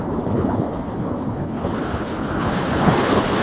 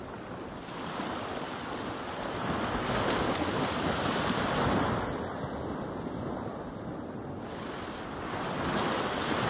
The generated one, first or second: first